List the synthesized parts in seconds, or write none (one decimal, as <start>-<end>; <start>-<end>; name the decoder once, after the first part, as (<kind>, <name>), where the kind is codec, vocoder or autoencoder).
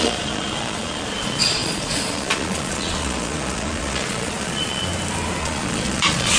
0.0-4.9 (vocoder, Vocos); 5.4-6.4